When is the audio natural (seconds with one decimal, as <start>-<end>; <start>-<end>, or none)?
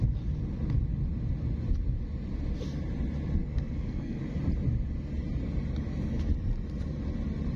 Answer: 0.0-3.4; 4.2-7.6